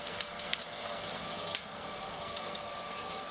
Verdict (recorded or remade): remade